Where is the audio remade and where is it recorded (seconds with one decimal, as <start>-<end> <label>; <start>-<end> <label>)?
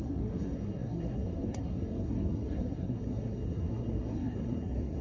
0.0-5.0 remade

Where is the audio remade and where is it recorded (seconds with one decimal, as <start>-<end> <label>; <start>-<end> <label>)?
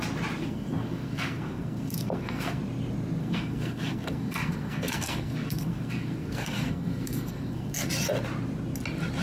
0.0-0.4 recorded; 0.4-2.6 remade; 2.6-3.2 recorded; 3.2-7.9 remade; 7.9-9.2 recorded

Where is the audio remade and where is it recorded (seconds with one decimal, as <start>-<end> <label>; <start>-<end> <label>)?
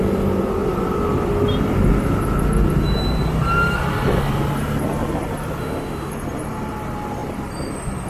0.0-5.6 recorded; 5.6-6.1 remade; 6.1-8.1 recorded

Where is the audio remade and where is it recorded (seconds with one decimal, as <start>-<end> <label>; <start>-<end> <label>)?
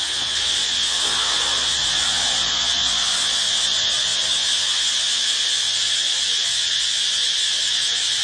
0.0-8.2 remade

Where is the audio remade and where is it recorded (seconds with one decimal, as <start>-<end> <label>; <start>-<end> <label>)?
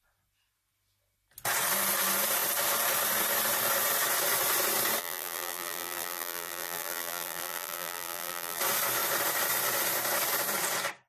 0.0-5.0 recorded; 5.0-8.6 remade; 8.6-11.1 recorded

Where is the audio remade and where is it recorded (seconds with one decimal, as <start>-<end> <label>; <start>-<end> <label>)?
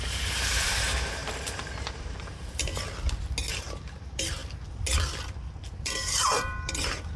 0.0-2.7 remade; 2.7-3.5 recorded; 3.5-4.4 remade; 4.4-5.8 recorded; 5.8-7.2 remade